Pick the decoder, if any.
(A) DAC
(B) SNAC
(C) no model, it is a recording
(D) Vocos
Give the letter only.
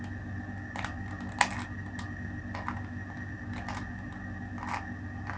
C